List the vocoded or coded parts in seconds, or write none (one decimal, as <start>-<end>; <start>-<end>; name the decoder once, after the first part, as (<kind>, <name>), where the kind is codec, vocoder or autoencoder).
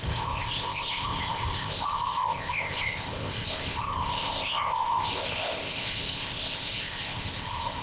0.0-7.8 (codec, ZipCodec)